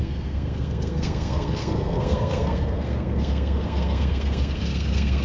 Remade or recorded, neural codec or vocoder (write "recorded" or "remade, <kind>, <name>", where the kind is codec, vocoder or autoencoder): remade, codec, SNAC